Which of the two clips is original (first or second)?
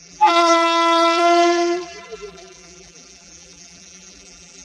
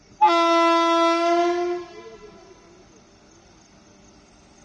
second